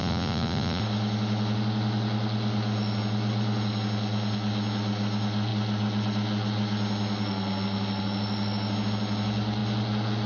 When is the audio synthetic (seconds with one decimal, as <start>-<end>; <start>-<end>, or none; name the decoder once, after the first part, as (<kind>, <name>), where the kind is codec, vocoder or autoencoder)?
0.0-0.8 (vocoder, Vocos)